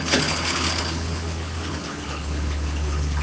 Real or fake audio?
fake